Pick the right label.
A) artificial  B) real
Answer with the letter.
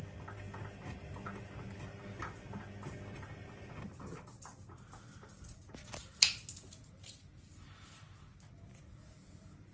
B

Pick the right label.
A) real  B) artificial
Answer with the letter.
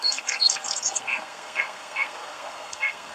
B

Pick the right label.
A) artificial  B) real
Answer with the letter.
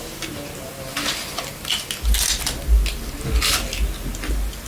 B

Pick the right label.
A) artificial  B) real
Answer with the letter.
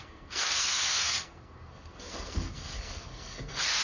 A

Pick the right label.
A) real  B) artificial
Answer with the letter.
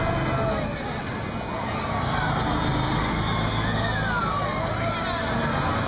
A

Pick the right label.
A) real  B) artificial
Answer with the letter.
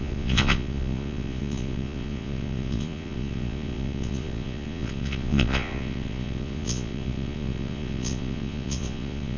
B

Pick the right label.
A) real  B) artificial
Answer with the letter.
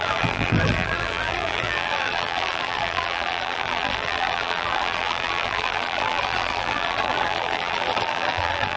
B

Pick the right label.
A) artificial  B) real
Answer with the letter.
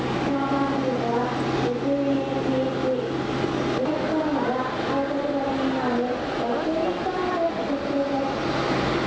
B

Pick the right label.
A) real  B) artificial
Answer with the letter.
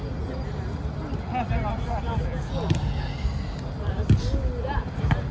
A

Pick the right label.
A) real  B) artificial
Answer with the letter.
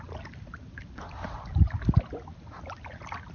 A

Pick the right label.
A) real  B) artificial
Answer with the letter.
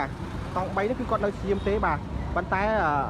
A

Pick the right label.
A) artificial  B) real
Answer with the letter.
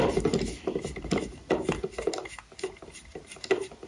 B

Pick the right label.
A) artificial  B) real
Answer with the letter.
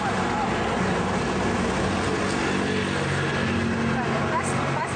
B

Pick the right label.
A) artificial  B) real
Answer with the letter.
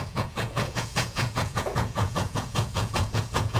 A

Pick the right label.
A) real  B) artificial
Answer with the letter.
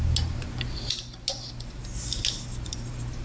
A